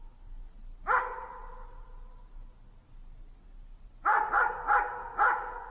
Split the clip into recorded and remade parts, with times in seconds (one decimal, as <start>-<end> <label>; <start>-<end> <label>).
0.0-5.7 recorded